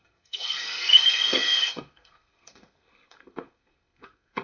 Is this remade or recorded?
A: remade